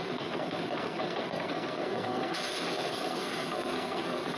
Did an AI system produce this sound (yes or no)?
yes